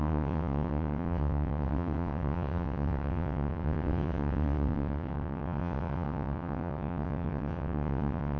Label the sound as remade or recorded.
remade